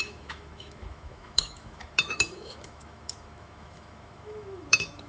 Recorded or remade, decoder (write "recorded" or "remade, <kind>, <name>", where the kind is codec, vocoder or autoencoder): remade, autoencoder, DAC-VAE